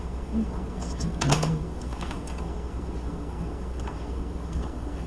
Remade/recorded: remade